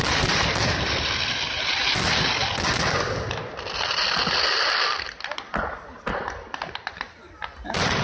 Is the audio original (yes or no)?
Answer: yes